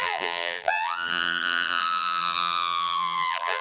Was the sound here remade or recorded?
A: remade